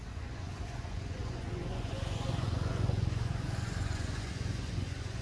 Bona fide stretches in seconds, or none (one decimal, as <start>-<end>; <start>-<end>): none